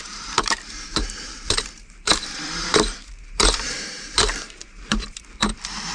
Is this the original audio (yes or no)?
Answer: no